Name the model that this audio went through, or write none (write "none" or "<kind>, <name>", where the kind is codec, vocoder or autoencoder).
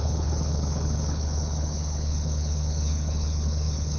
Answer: codec, HILCodec